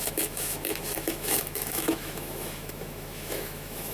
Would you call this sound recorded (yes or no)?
no